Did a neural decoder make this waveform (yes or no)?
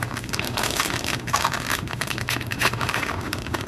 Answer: yes